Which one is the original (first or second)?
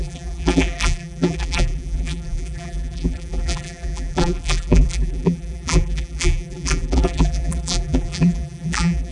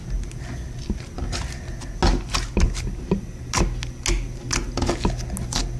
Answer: second